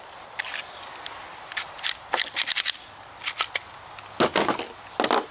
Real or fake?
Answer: real